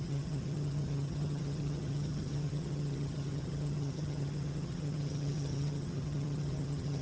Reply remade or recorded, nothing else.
remade